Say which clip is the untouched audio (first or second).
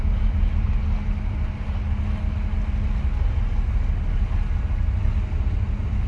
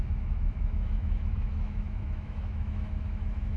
first